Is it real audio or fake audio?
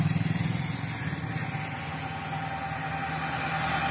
real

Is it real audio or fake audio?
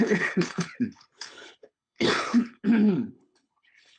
fake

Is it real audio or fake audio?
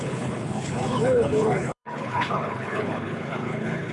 fake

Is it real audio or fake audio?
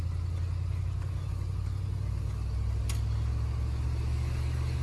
real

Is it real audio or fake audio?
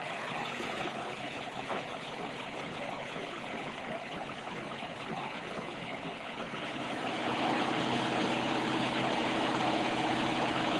fake